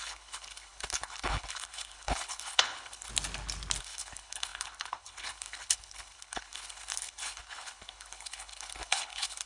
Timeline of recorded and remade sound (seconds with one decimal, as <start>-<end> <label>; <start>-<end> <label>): 0.0-3.1 remade; 3.1-3.8 recorded; 3.8-9.5 remade